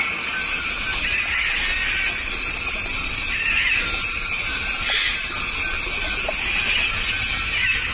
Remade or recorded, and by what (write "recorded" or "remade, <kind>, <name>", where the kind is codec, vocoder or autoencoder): recorded